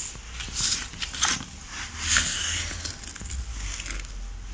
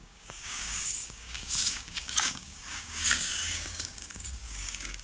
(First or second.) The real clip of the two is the first